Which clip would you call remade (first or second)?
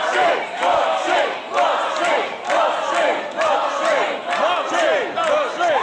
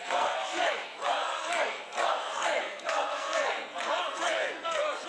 second